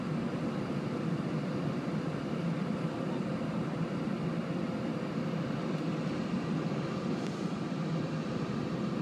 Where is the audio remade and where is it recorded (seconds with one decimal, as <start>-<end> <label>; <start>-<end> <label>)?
0.0-4.1 remade; 4.1-7.7 recorded; 7.7-9.0 remade

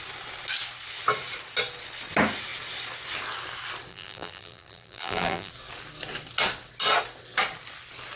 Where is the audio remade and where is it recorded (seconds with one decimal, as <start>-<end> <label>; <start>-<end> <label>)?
0.0-3.9 recorded; 3.9-5.5 remade; 5.5-8.2 recorded